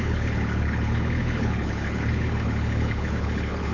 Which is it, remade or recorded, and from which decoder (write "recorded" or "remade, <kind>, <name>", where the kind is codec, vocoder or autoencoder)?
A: remade, codec, HILCodec